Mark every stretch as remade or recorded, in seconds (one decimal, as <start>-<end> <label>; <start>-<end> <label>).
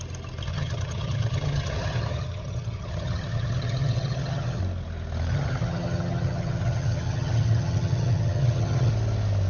0.0-0.5 recorded; 0.5-4.6 remade; 4.6-5.3 recorded; 5.3-8.9 remade; 8.9-9.5 recorded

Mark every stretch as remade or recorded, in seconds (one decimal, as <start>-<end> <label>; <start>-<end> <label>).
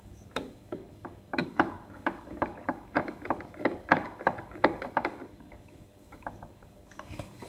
0.0-7.5 remade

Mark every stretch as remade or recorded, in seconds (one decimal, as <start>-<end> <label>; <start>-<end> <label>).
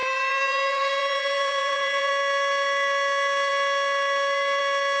0.0-2.1 remade; 2.1-5.0 recorded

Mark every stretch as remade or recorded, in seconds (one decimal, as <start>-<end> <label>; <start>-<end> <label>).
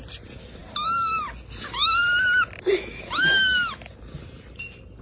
0.0-5.0 recorded